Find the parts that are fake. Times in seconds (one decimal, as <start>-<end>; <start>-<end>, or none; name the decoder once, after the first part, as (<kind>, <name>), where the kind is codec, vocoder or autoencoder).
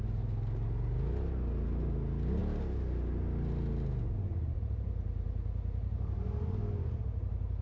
none